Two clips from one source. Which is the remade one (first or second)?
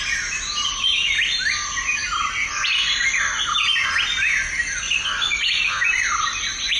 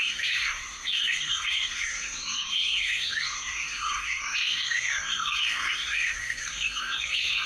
second